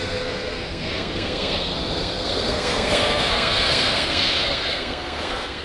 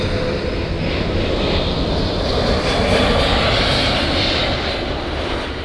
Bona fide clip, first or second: second